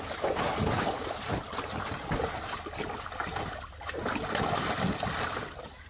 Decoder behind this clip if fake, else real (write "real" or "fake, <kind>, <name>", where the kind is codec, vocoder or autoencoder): real